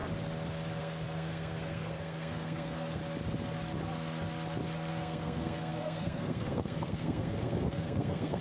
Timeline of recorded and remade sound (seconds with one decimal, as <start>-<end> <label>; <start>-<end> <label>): 0.0-0.8 recorded; 0.8-3.0 remade; 3.0-4.9 recorded; 4.9-8.4 remade